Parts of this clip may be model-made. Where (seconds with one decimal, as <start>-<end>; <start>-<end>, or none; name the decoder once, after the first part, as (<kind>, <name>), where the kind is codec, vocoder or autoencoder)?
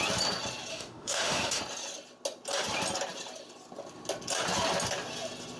0.7-1.6 (autoencoder, DAC-VAE)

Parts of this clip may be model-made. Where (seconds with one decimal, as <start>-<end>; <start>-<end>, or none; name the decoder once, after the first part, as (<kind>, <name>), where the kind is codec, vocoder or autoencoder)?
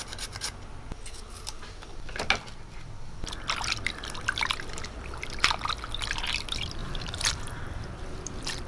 6.8-7.9 (vocoder, BigVGAN v2)